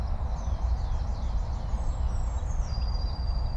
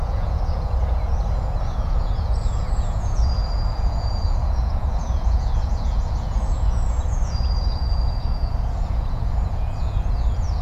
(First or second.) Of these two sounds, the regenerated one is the second